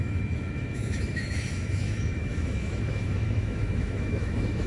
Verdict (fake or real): fake